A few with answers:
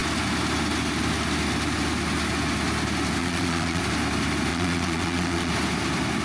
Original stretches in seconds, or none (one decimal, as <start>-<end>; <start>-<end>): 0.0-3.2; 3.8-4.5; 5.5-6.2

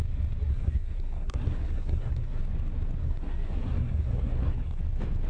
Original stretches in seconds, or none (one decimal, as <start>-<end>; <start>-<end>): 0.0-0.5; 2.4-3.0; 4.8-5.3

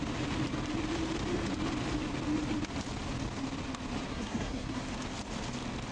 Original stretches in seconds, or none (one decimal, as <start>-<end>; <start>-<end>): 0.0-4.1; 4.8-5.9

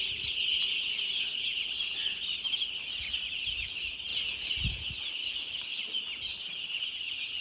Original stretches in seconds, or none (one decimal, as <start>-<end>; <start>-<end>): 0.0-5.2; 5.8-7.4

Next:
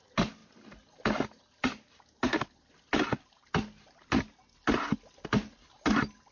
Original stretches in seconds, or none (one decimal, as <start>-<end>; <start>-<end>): 0.0-6.3

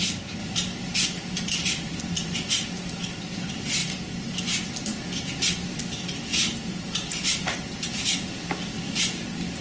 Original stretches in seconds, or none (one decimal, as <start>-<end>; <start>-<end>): 0.0-0.4; 1.7-3.8; 4.4-6.3; 8.3-9.6

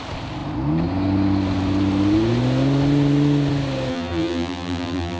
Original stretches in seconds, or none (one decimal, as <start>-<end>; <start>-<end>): 0.0-3.9